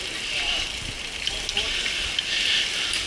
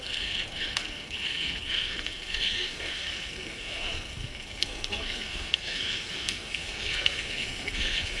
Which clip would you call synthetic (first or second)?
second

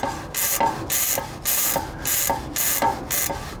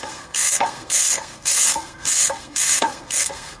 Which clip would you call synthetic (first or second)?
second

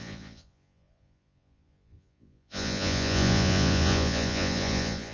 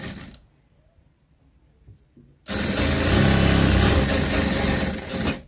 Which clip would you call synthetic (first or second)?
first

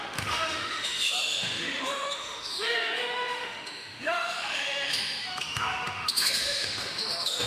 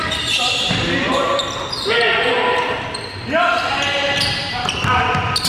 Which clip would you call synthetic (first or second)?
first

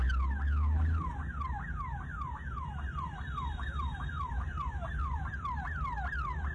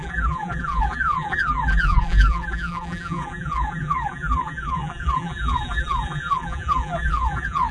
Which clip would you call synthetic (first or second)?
second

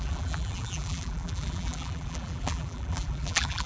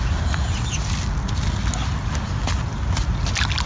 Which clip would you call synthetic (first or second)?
first